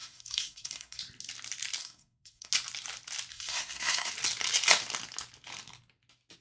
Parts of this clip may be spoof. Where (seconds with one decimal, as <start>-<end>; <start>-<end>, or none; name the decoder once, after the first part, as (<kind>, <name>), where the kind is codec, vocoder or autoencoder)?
0.0-1.0 (codec, SNAC); 1.8-2.5; 3.3-4.1